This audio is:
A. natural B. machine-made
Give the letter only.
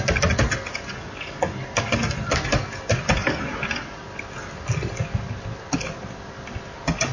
A